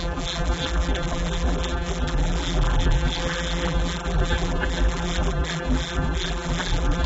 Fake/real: fake